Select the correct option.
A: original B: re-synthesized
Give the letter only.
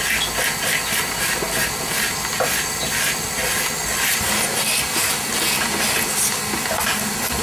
A